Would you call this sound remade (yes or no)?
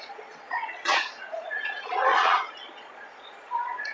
yes